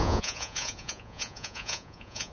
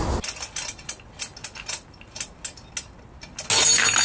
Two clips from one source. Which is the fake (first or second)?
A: first